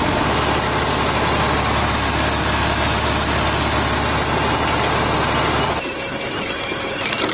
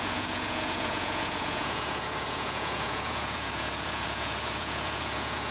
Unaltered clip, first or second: first